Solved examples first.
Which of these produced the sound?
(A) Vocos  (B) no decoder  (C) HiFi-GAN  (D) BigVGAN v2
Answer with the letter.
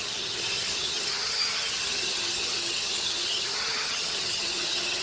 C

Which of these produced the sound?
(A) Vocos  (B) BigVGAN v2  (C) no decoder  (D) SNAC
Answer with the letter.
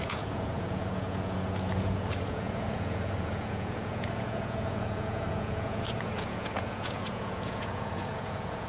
A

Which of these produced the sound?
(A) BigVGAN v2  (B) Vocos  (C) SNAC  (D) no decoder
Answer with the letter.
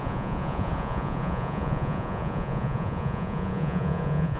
B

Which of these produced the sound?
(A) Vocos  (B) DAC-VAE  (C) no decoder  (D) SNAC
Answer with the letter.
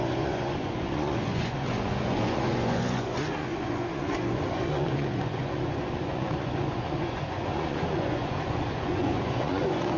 A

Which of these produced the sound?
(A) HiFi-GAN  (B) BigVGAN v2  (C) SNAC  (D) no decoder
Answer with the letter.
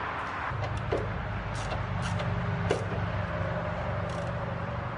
D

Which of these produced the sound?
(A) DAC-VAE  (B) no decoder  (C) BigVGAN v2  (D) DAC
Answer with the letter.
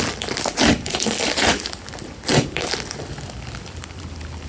C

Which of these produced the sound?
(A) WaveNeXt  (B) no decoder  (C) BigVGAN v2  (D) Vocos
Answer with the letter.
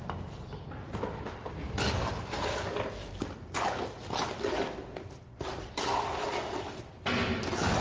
B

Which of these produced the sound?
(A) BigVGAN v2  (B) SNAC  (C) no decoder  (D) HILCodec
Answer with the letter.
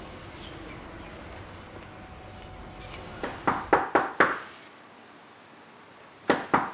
C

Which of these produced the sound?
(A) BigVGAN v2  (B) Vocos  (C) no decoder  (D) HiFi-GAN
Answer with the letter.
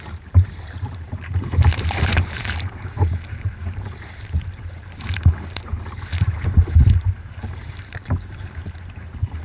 A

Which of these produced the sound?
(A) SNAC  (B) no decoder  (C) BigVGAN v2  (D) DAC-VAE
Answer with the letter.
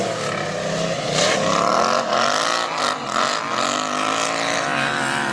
B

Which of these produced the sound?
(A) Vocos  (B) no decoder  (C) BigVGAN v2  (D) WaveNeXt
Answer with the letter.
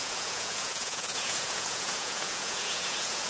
A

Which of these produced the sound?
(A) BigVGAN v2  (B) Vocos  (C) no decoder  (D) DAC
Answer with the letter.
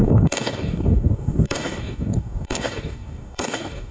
D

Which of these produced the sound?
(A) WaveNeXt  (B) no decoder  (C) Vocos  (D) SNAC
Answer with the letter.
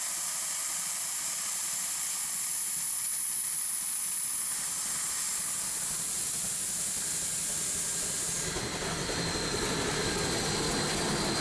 B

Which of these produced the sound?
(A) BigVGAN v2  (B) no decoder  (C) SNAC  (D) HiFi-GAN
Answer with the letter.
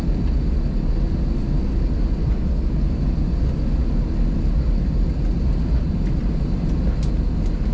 B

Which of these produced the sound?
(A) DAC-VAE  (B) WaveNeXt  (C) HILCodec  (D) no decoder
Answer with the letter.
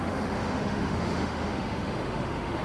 A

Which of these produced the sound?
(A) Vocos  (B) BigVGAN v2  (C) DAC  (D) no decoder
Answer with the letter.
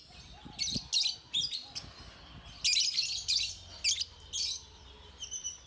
D